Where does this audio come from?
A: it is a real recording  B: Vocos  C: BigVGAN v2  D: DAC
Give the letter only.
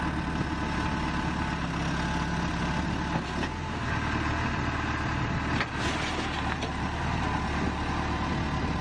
A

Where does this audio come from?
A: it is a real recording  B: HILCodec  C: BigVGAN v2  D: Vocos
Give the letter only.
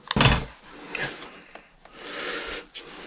A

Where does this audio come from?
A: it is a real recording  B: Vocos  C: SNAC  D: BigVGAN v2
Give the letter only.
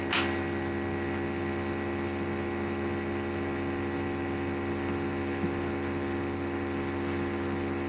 A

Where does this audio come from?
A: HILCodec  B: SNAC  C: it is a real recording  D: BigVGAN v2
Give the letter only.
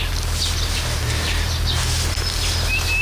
C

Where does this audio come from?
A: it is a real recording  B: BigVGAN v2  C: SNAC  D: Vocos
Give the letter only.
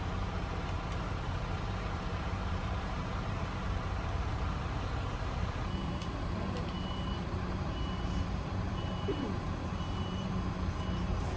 B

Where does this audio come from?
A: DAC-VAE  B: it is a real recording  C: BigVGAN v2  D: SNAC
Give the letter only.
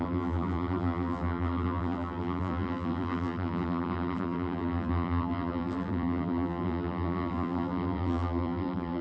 C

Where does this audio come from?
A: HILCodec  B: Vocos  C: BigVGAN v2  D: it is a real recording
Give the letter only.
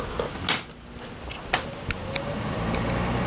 D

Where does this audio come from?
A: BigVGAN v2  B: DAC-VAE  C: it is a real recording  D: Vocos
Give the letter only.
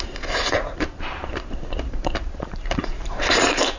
A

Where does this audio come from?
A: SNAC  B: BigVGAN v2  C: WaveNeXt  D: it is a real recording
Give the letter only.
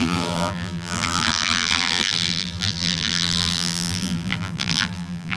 B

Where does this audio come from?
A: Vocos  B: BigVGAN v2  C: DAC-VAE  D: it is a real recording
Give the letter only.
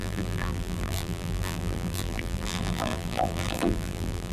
B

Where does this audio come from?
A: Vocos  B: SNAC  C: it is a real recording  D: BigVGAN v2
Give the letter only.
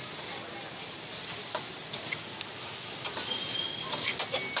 C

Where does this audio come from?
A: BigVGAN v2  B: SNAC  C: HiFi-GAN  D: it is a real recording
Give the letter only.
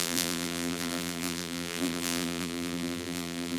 A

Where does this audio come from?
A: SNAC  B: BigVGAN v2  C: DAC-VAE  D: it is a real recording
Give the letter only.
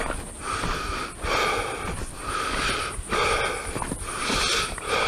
D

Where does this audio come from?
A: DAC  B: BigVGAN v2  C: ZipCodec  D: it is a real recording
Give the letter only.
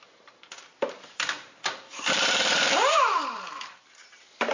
B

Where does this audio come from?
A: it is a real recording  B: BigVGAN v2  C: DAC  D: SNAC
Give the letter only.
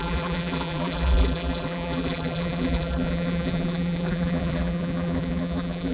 B